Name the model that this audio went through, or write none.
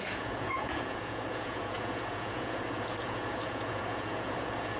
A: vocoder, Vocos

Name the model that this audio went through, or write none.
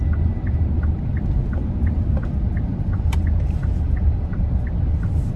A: vocoder, BigVGAN v2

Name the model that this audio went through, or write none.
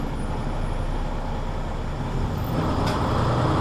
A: none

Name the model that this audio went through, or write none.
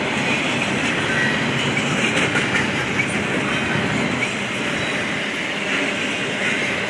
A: none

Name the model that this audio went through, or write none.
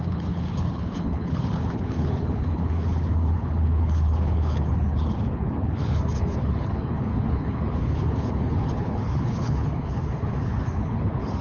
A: codec, HILCodec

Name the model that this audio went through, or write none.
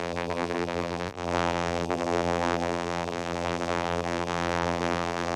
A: vocoder, BigVGAN v2